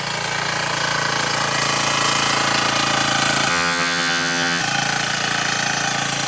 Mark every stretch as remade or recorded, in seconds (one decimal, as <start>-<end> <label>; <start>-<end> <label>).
0.0-3.5 recorded; 3.5-4.6 remade; 4.6-6.3 recorded